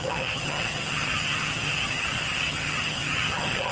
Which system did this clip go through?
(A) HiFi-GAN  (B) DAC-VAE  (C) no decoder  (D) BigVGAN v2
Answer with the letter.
A